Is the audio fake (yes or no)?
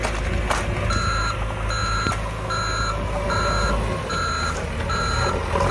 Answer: no